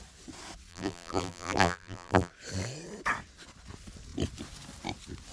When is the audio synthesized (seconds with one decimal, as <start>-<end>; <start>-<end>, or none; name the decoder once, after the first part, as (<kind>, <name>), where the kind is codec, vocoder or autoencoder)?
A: 0.7-2.3 (vocoder, BigVGAN v2)